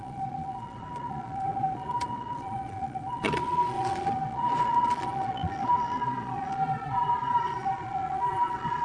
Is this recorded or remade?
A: remade